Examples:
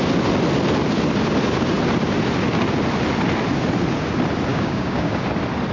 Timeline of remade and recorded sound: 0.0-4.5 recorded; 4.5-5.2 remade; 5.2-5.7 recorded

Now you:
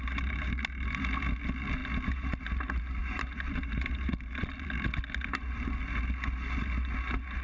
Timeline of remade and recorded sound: 0.0-3.0 recorded; 3.0-4.4 remade; 4.4-7.4 recorded

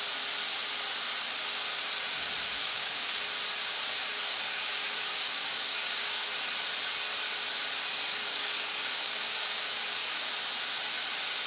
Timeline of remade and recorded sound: 0.0-2.5 recorded; 2.5-3.2 remade; 3.2-3.6 recorded; 3.6-6.3 remade; 6.3-8.1 recorded; 8.1-10.3 remade; 10.3-11.5 recorded

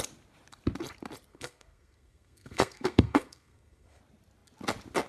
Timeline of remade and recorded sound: 0.0-1.3 recorded; 1.3-4.0 remade; 4.0-5.1 recorded